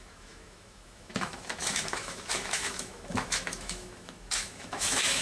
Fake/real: fake